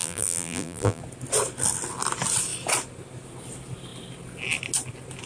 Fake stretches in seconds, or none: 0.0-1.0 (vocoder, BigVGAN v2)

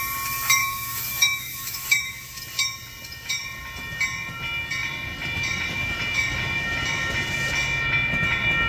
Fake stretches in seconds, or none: 0.6-2.4 (autoencoder, DAC-VAE)

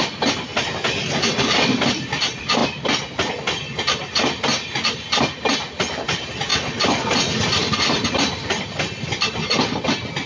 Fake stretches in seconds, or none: none

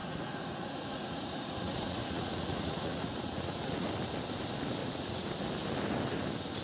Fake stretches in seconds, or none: 0.0-3.9 (vocoder, Vocos); 4.8-5.3